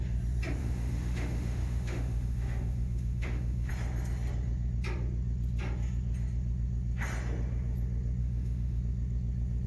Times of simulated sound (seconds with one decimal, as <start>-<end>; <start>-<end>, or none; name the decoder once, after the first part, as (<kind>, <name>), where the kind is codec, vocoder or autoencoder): 0.6-3.7 (autoencoder, DAC-VAE); 8.2-8.8